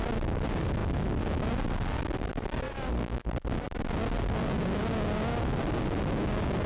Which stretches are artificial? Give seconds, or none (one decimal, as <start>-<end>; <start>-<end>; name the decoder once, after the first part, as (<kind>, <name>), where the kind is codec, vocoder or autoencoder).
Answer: none